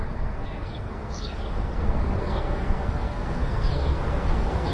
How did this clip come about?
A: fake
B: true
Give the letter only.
A